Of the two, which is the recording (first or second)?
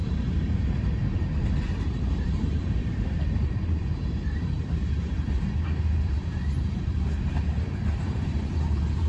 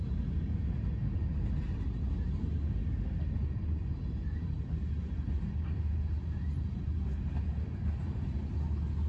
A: second